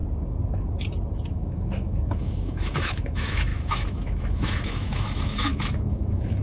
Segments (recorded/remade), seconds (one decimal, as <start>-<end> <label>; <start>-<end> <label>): 0.0-1.3 recorded; 1.3-6.4 remade